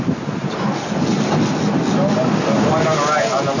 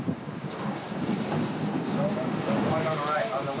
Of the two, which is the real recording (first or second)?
first